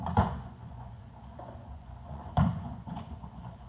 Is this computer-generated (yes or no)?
yes